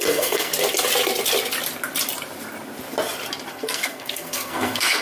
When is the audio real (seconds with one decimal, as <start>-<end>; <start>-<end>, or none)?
0.5-3.5